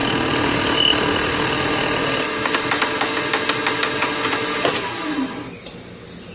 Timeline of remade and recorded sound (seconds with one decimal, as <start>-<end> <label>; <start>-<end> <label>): 0.0-6.3 recorded

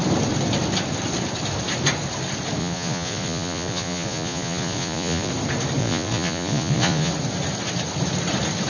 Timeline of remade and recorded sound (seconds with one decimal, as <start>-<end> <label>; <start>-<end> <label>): 0.0-2.6 recorded; 2.6-5.3 remade; 5.3-5.8 recorded; 5.8-7.1 remade; 7.1-8.7 recorded